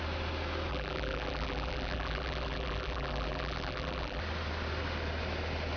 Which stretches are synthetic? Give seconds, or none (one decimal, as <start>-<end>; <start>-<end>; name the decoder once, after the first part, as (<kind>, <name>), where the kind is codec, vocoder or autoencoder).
0.7-4.2 (vocoder, BigVGAN v2)